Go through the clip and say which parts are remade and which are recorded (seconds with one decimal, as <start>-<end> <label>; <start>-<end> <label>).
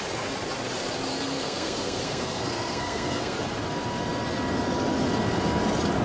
0.0-1.1 recorded; 1.1-3.4 remade; 3.4-6.0 recorded